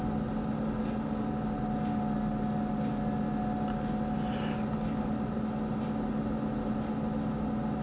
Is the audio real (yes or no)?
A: yes